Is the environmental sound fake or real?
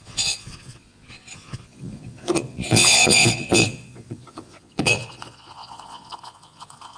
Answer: fake